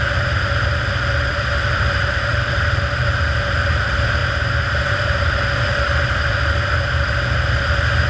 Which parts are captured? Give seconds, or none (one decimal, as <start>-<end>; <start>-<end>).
0.0-2.3; 2.9-4.2; 5.2-8.1